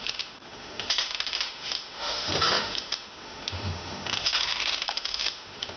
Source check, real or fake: fake